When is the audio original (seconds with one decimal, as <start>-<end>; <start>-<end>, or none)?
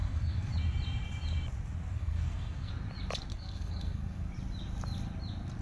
0.5-1.9; 2.7-3.3; 4.3-5.6